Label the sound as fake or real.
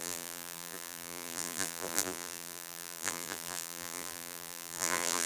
fake